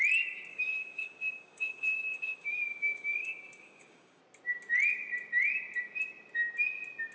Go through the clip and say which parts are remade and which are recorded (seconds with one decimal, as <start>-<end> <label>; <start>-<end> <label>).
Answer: 0.0-0.5 recorded; 0.5-4.2 remade; 4.2-7.1 recorded